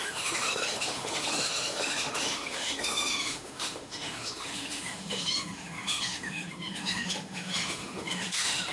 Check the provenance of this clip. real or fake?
fake